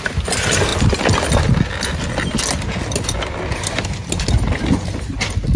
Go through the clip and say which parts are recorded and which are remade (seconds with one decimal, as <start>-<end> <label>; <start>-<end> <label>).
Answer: 0.0-5.6 recorded